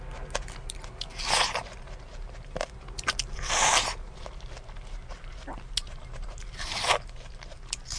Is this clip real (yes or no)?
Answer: yes